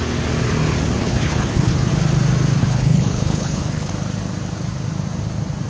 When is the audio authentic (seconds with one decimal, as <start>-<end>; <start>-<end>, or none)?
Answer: 0.0-1.0; 1.9-2.6; 3.9-5.7